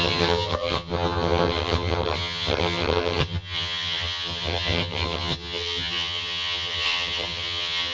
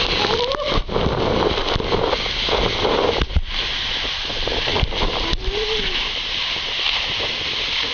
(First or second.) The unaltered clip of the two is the second